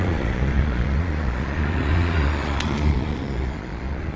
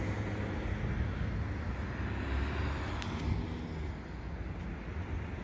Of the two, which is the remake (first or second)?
first